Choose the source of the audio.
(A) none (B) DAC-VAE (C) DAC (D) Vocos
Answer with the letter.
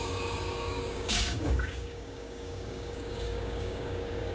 C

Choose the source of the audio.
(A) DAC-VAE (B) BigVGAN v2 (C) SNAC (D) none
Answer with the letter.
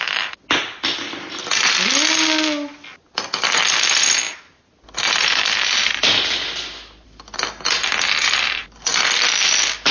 D